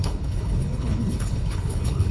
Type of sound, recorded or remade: remade